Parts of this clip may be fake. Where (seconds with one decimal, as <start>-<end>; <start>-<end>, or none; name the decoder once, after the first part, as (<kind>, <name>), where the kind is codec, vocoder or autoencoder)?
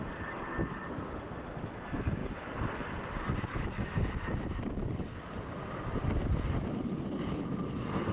none